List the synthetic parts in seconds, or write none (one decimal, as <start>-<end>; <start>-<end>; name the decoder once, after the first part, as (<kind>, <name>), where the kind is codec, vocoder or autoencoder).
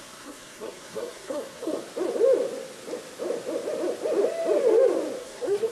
0.0-1.8 (codec, SNAC); 5.2-5.7